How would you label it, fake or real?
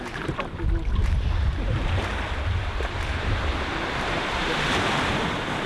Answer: fake